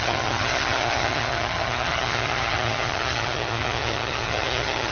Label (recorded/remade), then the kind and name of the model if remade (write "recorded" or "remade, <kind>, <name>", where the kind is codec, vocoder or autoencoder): remade, vocoder, HiFi-GAN